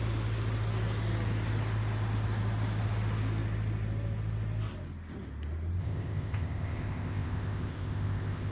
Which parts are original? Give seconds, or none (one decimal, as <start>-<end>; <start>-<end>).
0.0-5.8